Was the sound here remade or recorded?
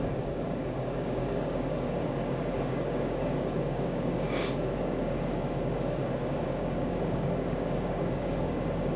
remade